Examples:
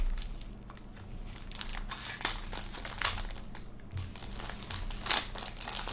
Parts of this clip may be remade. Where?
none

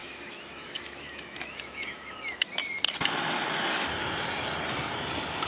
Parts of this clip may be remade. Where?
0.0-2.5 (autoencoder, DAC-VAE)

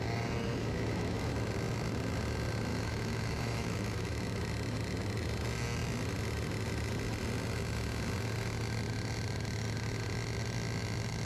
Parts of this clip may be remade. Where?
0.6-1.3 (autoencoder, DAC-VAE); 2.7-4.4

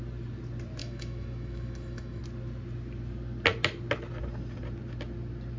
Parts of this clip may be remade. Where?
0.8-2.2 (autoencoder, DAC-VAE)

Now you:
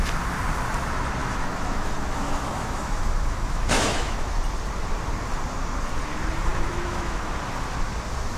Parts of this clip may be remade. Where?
1.2-4.4 (autoencoder, DAC-VAE); 6.5-7.3